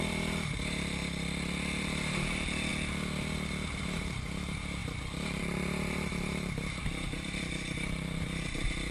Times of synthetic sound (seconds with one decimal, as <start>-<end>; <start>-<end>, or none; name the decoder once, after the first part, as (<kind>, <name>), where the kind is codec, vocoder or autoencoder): 0.0-1.0 (vocoder, BigVGAN v2); 1.8-2.7; 3.7-8.9